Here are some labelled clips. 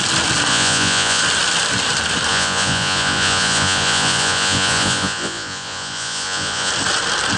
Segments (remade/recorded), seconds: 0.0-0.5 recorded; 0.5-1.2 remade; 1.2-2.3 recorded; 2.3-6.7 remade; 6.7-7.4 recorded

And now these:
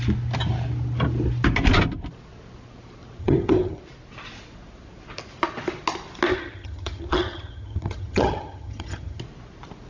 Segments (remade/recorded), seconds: 0.0-3.2 recorded; 3.2-3.8 remade; 3.8-6.3 recorded; 6.3-9.2 remade; 9.2-9.9 recorded